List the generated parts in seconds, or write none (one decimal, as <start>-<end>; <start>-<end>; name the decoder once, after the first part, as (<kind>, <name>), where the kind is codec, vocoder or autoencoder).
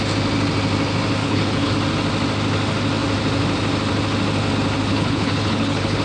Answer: 1.2-1.7 (codec, HILCodec); 4.9-6.0